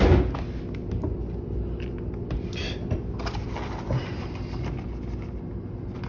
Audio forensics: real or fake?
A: real